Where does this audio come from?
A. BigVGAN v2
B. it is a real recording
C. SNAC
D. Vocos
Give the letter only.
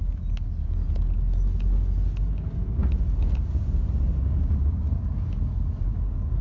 B